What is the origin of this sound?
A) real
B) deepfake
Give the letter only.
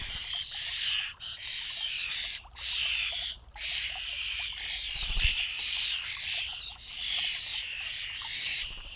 B